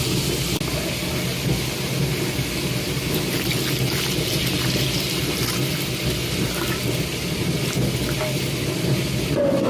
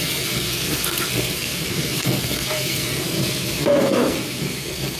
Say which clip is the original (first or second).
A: first